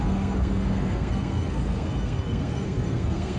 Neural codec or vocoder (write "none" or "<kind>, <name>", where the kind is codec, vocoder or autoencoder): codec, SNAC